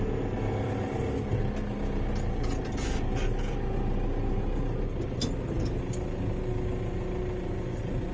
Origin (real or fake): real